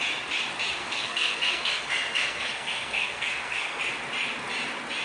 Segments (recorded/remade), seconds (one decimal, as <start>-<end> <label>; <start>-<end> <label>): 0.0-0.8 recorded; 0.8-3.8 remade; 3.8-5.0 recorded